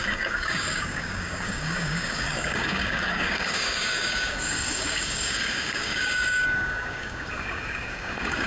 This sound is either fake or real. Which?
fake